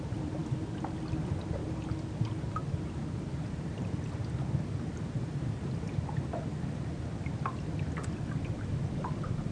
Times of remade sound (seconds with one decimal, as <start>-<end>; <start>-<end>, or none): none